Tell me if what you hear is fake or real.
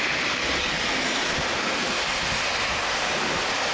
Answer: real